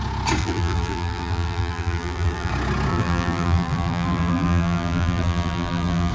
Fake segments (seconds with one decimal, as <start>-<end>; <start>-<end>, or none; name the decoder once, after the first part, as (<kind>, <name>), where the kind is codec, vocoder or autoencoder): 0.4-2.5 (vocoder, BigVGAN v2); 2.9-6.1